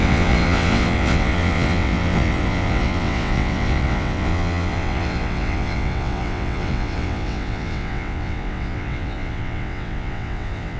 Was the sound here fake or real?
fake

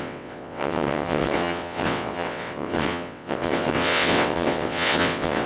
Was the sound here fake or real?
fake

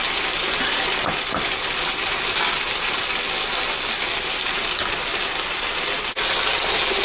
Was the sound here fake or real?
real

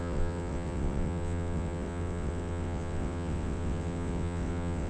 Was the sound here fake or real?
fake